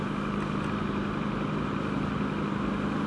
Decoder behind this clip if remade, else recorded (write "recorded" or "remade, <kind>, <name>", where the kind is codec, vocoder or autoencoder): recorded